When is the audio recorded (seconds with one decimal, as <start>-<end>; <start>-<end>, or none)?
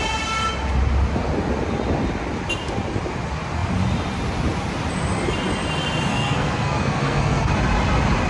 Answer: 0.0-6.1; 7.5-8.3